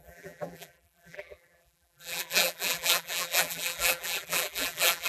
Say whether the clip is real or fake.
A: fake